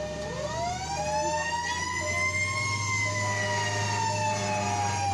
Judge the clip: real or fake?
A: real